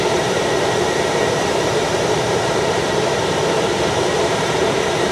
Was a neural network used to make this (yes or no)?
yes